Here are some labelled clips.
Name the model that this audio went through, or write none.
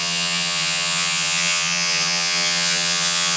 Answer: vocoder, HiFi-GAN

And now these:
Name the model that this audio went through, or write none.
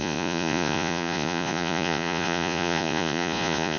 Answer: vocoder, Vocos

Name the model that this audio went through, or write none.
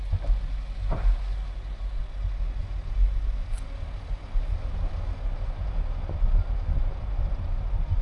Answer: none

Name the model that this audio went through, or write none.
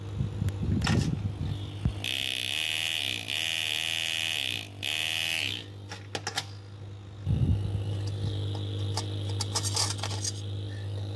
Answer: none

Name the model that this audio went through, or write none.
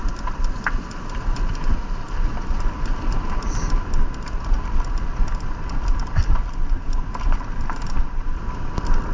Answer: none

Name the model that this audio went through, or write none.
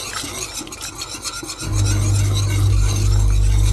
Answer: none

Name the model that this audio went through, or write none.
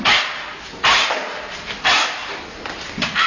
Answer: none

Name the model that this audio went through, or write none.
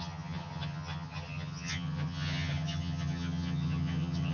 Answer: vocoder, HiFi-GAN